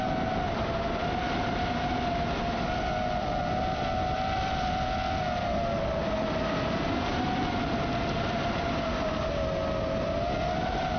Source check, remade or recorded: recorded